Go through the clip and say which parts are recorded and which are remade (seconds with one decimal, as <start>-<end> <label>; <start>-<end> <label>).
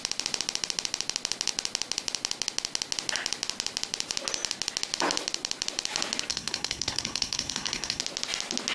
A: 0.0-6.3 recorded; 6.3-8.0 remade; 8.0-8.7 recorded